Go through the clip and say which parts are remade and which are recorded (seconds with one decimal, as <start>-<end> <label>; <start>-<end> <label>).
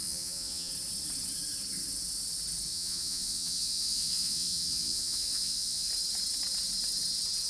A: 0.0-0.7 remade; 0.7-2.7 recorded; 2.7-5.9 remade; 5.9-7.5 recorded